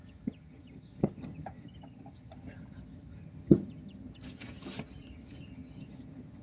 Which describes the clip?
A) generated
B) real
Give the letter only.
A